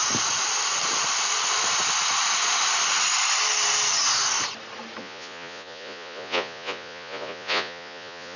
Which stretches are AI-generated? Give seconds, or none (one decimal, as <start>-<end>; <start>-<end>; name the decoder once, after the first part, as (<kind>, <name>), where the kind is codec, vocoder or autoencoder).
5.0-8.4 (vocoder, Vocos)